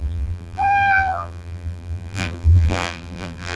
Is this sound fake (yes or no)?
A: yes